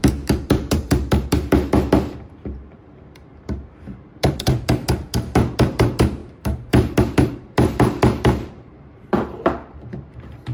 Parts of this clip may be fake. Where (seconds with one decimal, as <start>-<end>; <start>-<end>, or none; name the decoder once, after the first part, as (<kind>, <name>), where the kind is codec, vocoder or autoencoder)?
0.0-10.5 (vocoder, BigVGAN v2)